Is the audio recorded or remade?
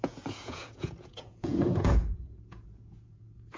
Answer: remade